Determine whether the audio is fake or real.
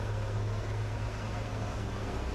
fake